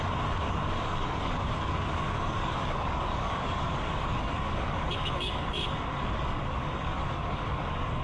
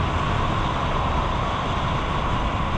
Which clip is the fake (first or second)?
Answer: first